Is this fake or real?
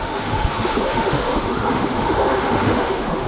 fake